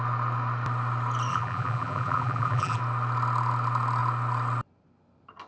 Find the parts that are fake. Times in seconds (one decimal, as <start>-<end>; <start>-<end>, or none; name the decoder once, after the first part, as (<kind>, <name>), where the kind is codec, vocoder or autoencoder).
1.3-2.8 (vocoder, BigVGAN v2)